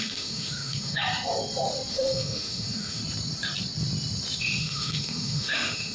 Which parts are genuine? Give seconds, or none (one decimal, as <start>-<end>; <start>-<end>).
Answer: 1.0-1.9; 3.0-4.4